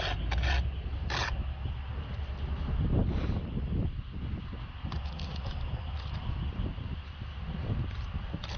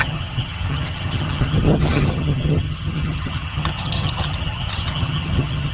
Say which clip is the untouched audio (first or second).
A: first